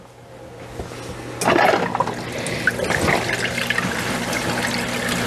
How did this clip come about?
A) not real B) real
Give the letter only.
B